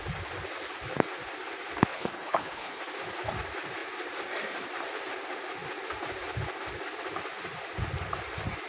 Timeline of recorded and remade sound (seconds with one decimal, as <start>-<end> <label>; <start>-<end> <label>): 0.0-1.9 recorded; 1.9-2.8 remade; 2.8-8.7 recorded